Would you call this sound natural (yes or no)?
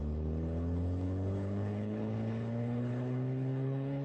no